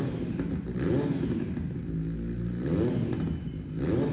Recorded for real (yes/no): yes